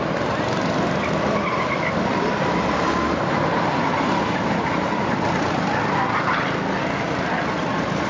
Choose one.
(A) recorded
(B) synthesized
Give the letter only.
A